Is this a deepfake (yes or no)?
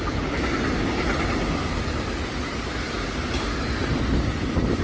no